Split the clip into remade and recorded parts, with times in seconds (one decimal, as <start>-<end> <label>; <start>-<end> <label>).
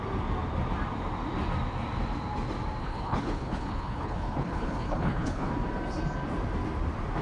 0.0-2.8 recorded; 2.8-5.5 remade; 5.5-7.2 recorded